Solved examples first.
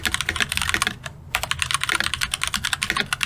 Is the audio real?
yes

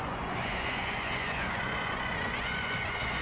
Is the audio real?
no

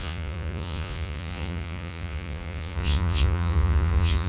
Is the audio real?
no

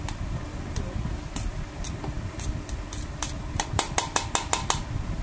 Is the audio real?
yes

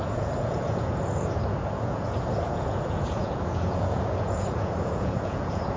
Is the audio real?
no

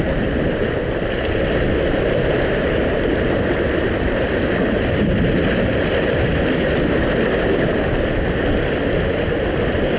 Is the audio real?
yes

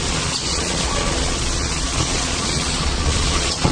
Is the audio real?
no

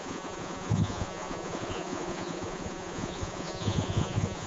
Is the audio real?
no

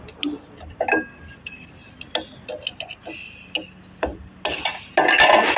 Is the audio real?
yes